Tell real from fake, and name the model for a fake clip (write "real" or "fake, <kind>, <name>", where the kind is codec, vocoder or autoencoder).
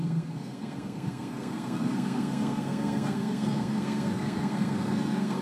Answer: fake, codec, SNAC